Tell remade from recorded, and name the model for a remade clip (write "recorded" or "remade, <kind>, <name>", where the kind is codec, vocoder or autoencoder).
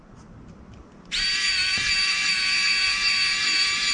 remade, vocoder, BigVGAN v2